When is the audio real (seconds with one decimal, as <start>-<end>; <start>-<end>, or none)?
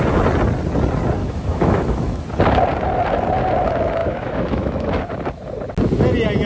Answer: 0.0-1.2; 2.2-4.0; 5.0-6.5